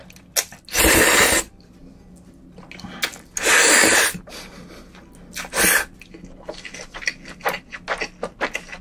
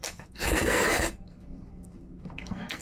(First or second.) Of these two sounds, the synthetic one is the second